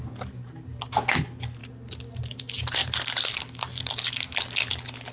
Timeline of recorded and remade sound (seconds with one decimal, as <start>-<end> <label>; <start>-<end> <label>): 0.0-1.6 recorded; 1.6-2.4 remade; 2.4-2.8 recorded; 2.8-3.9 remade; 3.9-5.1 recorded